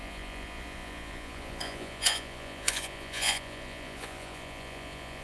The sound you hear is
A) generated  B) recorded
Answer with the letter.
A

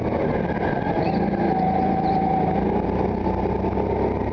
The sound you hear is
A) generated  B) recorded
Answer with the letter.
B